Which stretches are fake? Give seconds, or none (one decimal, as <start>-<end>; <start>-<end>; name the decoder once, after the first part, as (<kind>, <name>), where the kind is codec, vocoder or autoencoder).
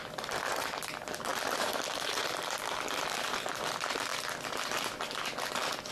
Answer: 1.3-3.5 (vocoder, BigVGAN v2); 4.1-5.5